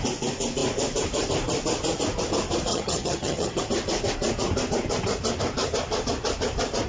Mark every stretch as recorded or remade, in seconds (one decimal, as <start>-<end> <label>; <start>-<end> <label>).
0.0-2.7 recorded; 2.7-3.6 remade; 3.6-6.9 recorded